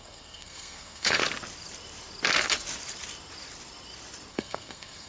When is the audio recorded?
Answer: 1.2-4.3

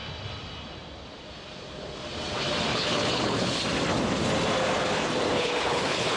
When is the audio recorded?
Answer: 0.0-2.7; 3.6-5.3

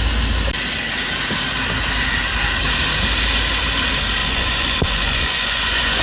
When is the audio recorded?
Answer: 0.0-4.2

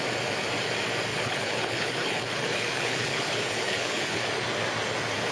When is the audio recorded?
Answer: 0.0-1.1; 4.3-5.3